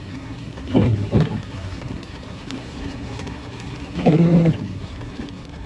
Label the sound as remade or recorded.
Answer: remade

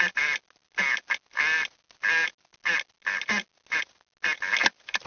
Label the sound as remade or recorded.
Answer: recorded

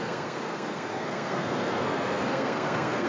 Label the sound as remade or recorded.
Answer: remade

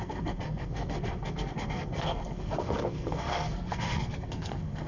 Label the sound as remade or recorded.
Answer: remade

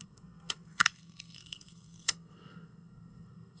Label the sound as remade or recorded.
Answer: remade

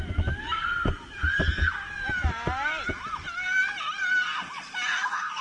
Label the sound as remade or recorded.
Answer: recorded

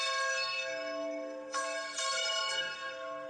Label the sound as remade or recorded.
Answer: remade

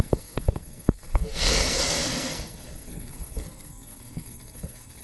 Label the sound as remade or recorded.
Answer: remade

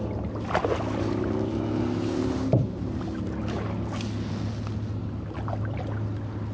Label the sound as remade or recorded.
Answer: recorded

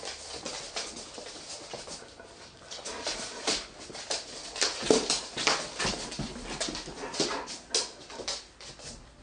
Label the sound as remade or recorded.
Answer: recorded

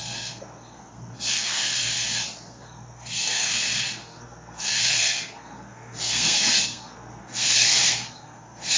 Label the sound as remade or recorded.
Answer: remade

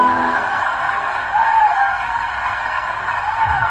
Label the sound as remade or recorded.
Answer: remade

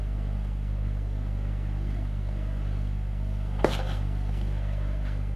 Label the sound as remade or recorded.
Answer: remade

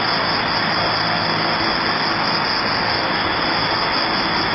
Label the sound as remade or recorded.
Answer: recorded